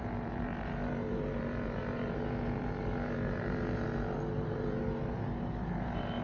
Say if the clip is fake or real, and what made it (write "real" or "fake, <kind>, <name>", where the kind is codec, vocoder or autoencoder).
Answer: fake, vocoder, BigVGAN v2